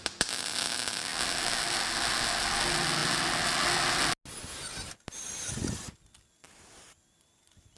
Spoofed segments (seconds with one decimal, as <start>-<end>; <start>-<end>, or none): none